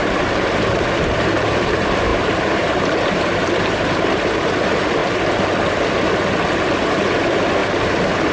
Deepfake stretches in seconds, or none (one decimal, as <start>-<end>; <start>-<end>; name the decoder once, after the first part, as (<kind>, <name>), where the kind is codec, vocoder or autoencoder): 0.0-5.0 (vocoder, BigVGAN v2); 6.8-8.3